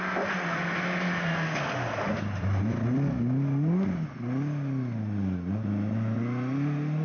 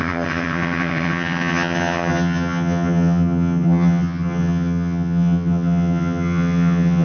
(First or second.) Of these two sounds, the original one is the first